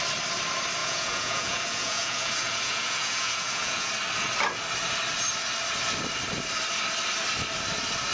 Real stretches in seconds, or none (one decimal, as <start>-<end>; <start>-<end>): 0.0-0.8; 3.9-8.1